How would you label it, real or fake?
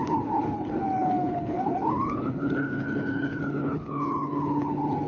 fake